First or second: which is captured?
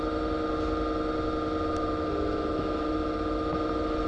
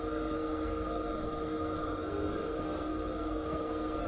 first